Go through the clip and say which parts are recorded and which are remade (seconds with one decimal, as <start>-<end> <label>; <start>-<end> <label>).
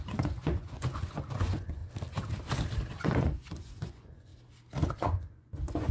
0.0-1.8 remade; 1.8-3.0 recorded; 3.0-4.3 remade; 4.3-4.9 recorded; 4.9-5.9 remade